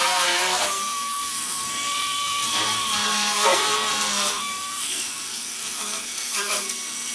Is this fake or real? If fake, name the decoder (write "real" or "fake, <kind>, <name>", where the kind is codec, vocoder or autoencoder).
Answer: fake, codec, SNAC